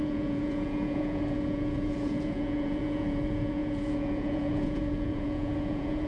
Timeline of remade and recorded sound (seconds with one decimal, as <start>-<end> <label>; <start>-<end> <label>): 0.0-6.1 remade

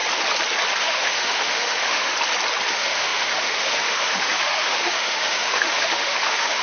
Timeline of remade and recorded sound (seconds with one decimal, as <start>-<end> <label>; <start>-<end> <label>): 0.0-0.8 recorded; 0.8-2.1 remade; 2.1-2.7 recorded; 2.7-6.6 remade

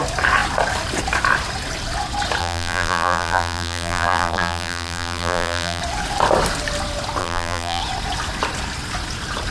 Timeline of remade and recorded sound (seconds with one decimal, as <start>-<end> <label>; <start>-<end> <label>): 0.0-2.4 recorded; 2.4-5.8 remade; 5.8-7.2 recorded; 7.2-7.8 remade; 7.8-9.5 recorded

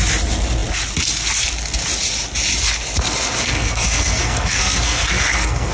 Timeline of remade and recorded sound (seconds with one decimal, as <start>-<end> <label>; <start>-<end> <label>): 0.0-3.4 recorded; 3.4-5.7 remade

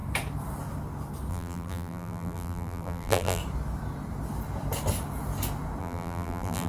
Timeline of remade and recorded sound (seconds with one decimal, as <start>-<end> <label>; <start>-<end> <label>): 0.0-1.3 recorded; 1.3-3.4 remade; 3.4-5.8 recorded; 5.8-6.7 remade

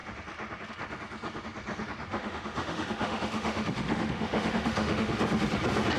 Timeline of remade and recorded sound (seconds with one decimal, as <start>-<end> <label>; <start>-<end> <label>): 0.0-2.1 recorded; 2.1-5.1 remade; 5.1-6.0 recorded

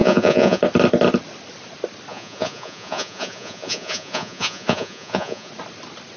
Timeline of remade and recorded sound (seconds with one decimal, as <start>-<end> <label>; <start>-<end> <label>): 0.0-0.6 remade; 0.6-2.1 recorded; 2.1-5.5 remade; 5.5-6.2 recorded

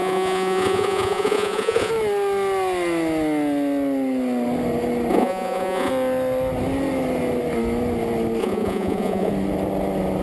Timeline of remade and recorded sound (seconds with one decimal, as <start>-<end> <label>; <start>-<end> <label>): 0.0-1.9 remade; 1.9-5.1 recorded; 5.1-5.9 remade; 5.9-8.4 recorded; 8.4-9.3 remade; 9.3-10.2 recorded